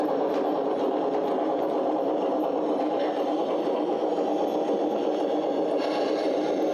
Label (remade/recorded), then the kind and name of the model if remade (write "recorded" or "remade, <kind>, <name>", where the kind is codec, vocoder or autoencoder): recorded